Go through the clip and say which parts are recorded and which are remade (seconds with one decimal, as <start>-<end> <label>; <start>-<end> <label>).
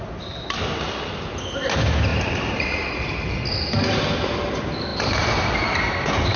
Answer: 0.0-2.1 recorded; 2.1-3.5 remade; 3.5-6.4 recorded